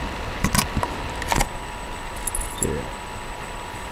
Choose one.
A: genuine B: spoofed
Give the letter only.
A